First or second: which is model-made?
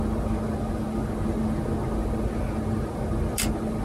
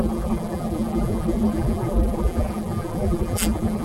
second